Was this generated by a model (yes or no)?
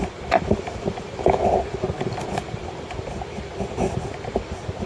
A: no